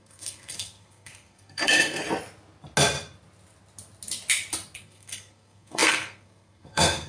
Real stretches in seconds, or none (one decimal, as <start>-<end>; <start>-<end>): 2.0-4.8